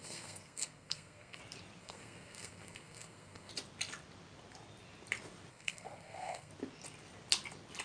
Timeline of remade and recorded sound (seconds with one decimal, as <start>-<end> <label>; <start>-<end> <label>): 0.0-1.4 remade; 1.4-1.8 recorded; 1.8-3.5 remade; 3.5-5.5 recorded; 5.5-6.5 remade; 6.5-7.8 recorded